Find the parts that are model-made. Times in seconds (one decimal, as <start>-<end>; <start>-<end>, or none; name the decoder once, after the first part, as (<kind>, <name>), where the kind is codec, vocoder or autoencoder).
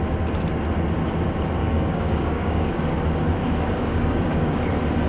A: 1.6-2.7 (codec, DAC); 3.4-4.6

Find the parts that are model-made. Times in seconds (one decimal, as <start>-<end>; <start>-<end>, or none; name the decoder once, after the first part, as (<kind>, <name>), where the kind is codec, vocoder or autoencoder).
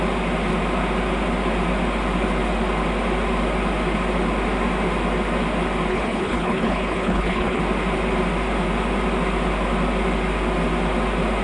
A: 5.9-7.6 (codec, HILCodec)